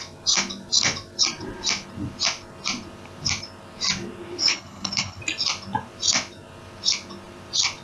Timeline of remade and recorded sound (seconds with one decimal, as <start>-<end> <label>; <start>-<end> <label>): 0.0-4.4 recorded; 4.4-5.2 remade; 5.2-7.8 recorded